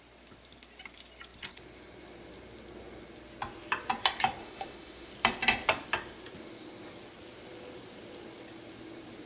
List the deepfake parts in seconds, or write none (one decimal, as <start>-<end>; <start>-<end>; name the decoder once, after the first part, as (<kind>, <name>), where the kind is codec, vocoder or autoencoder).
4.4-5.1 (autoencoder, DAC-VAE)